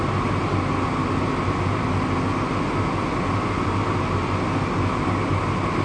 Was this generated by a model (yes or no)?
no